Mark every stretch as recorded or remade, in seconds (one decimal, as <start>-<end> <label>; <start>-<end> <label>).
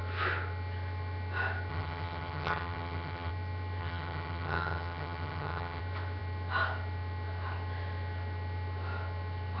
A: 0.0-1.7 recorded; 1.7-3.3 remade; 3.3-3.8 recorded; 3.8-5.8 remade; 5.8-9.6 recorded